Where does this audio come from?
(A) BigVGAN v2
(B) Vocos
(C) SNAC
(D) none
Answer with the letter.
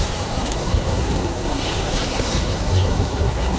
C